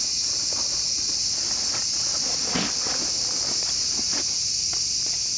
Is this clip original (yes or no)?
yes